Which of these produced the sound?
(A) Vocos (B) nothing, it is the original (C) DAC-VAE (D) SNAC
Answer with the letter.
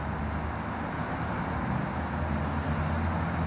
B